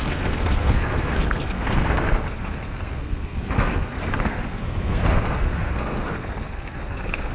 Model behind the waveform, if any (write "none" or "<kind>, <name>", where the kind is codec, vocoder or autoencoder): codec, SNAC